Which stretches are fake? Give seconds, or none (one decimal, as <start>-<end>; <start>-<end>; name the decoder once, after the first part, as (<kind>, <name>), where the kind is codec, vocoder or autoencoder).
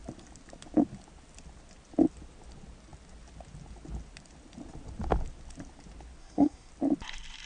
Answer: 6.2-6.7 (codec, SNAC)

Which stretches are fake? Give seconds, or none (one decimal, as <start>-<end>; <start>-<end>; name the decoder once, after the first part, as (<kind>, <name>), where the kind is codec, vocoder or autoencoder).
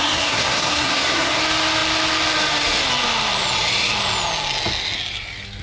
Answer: 0.0-1.4 (codec, SNAC)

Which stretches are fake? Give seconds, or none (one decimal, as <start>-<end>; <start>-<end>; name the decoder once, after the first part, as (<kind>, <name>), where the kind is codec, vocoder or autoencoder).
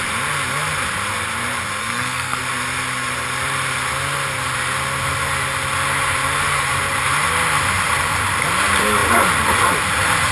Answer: 1.8-2.4 (codec, SNAC)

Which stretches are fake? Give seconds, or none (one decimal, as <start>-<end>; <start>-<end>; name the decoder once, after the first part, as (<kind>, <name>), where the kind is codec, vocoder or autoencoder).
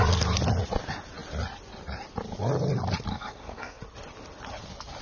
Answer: 3.1-3.8 (codec, SNAC)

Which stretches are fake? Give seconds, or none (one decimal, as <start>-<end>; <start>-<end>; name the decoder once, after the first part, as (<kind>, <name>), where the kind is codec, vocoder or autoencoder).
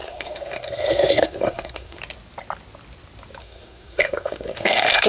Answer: 0.0-2.0 (codec, SNAC); 3.4-5.1